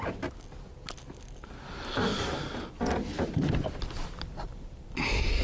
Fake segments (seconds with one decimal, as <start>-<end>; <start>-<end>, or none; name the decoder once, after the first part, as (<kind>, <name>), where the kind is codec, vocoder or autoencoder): none